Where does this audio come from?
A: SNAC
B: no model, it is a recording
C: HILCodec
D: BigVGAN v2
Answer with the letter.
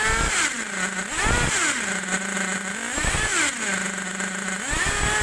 B